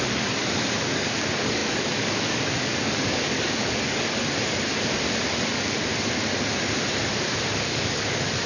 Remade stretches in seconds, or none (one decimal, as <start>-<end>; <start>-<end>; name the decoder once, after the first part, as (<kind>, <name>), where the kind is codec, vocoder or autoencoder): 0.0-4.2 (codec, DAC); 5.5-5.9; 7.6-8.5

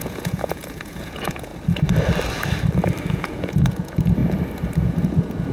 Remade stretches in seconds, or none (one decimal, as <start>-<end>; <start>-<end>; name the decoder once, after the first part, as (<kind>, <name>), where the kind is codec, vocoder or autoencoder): 0.0-1.5 (vocoder, Vocos); 3.1-4.2; 4.8-5.5

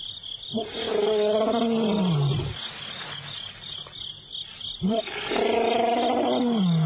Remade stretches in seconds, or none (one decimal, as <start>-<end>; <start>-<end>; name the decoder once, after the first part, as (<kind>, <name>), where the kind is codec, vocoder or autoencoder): none

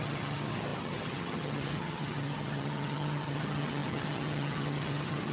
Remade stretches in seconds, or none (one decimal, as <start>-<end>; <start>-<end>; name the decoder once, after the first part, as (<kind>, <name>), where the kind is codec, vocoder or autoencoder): 0.0-5.3 (vocoder, HiFi-GAN)